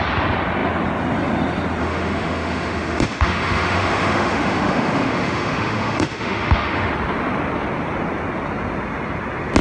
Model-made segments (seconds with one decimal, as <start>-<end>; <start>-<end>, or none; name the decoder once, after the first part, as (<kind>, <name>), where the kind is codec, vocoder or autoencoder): 1.8-6.9 (autoencoder, DAC-VAE)